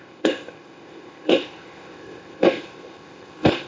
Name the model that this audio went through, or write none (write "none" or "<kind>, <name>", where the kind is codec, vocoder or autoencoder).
codec, ZipCodec